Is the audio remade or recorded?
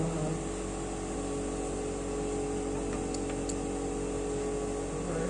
recorded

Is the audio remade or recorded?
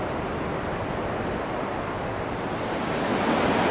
recorded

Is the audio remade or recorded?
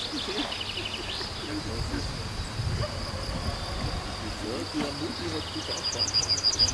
recorded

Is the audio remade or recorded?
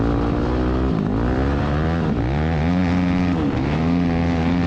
recorded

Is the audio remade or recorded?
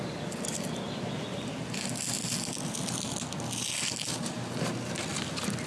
recorded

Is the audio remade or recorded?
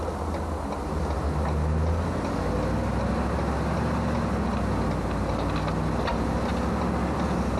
recorded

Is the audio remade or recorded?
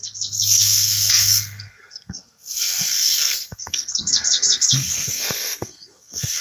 remade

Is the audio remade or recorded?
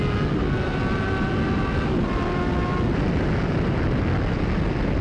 recorded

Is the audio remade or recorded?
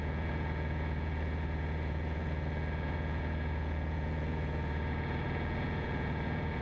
remade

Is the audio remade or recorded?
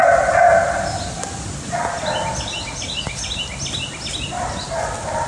recorded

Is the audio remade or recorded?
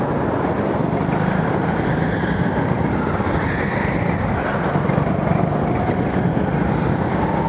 recorded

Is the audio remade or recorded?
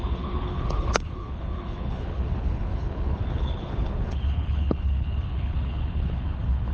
remade